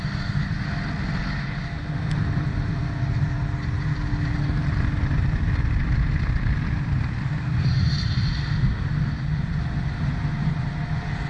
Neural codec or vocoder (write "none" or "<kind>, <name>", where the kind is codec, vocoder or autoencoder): none